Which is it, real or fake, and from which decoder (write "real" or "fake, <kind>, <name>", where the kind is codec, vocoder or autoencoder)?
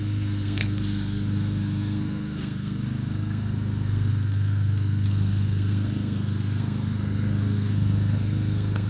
fake, codec, SNAC